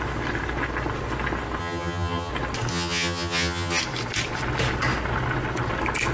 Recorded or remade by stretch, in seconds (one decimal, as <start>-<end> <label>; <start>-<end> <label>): 0.0-1.6 recorded; 1.6-2.3 remade; 2.3-2.7 recorded; 2.7-3.8 remade; 3.8-6.1 recorded